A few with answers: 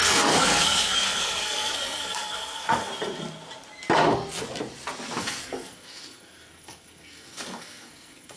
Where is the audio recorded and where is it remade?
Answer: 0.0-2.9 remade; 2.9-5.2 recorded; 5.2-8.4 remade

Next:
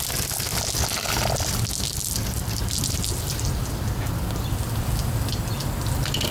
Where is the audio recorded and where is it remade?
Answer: 0.0-6.3 recorded

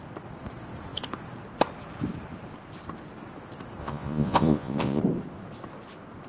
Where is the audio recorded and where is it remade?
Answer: 0.0-3.8 recorded; 3.8-5.0 remade; 5.0-6.3 recorded

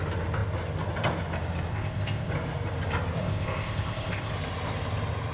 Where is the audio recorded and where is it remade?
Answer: 0.0-1.7 recorded; 1.7-2.3 remade; 2.3-3.2 recorded; 3.2-4.3 remade; 4.3-5.3 recorded

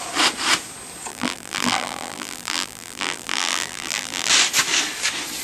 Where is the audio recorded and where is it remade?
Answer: 0.0-1.1 recorded; 1.1-4.3 remade; 4.3-5.4 recorded

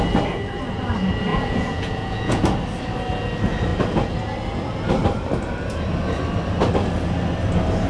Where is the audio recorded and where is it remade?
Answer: 0.0-1.3 recorded; 1.3-2.4 remade; 2.4-7.9 recorded